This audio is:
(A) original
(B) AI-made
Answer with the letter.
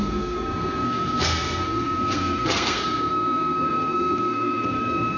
B